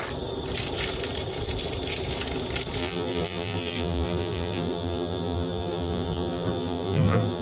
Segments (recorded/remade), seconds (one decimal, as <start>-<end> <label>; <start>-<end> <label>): 0.0-2.8 recorded; 2.8-7.4 remade